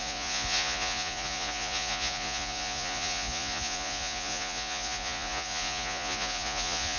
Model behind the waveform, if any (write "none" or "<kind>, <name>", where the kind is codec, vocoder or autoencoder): vocoder, Vocos